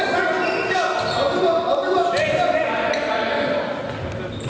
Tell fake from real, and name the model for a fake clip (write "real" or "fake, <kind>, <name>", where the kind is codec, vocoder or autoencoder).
real